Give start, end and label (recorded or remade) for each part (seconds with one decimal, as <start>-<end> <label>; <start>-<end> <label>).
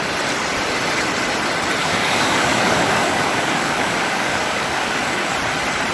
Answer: 0.0-1.8 recorded; 1.8-5.3 remade; 5.3-5.9 recorded